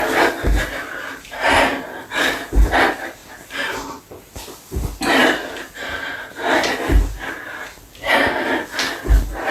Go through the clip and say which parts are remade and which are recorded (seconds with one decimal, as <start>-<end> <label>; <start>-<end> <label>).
0.0-9.5 recorded